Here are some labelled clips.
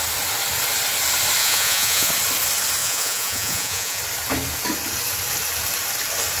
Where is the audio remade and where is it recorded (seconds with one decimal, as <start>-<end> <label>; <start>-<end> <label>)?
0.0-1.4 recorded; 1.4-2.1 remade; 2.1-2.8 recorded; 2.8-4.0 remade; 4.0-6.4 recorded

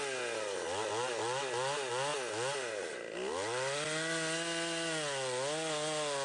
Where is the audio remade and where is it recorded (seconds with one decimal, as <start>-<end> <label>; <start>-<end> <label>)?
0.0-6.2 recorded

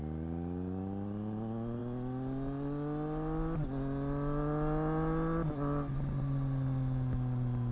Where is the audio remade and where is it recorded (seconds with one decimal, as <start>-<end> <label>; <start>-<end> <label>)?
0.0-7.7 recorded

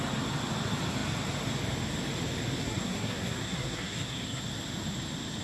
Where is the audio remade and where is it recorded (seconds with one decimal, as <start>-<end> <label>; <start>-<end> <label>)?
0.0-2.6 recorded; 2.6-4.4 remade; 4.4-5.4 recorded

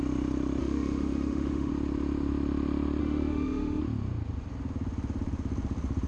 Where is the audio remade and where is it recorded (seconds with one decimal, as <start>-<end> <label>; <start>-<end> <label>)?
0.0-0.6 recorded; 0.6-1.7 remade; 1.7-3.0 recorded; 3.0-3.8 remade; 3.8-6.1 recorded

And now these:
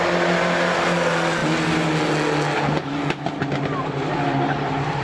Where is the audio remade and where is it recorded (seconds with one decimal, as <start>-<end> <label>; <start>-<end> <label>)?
0.0-5.0 recorded